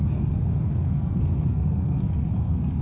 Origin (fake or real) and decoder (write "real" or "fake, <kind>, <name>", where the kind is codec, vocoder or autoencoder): fake, codec, SNAC